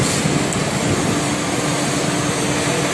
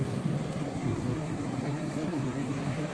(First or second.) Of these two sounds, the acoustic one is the first